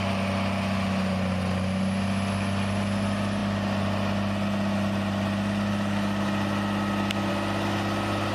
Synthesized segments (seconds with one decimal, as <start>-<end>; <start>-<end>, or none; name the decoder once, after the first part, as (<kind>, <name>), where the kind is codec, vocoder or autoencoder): none